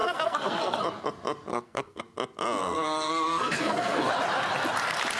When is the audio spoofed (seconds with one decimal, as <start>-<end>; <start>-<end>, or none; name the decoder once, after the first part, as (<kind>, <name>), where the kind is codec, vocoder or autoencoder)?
0.0-0.8 (codec, SNAC); 1.5-2.0; 2.6-4.1